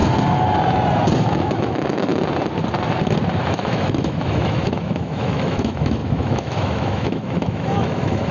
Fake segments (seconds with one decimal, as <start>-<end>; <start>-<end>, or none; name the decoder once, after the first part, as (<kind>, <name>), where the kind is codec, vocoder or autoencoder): 1.2-2.1 (autoencoder, DAC-VAE); 3.4-8.3